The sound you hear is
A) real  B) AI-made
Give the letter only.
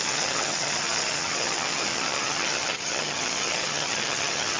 B